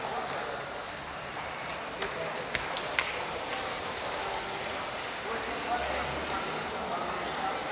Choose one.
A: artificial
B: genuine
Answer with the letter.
B